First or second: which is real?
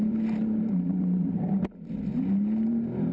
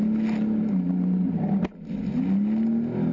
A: second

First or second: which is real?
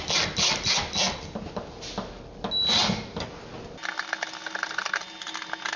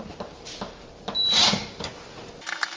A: first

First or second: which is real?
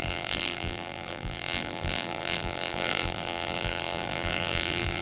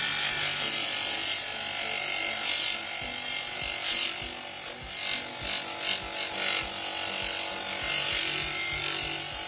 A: second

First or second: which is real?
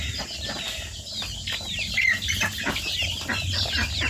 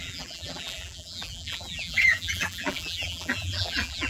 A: first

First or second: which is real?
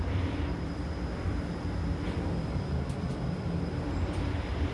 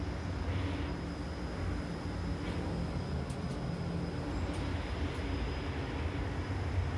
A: second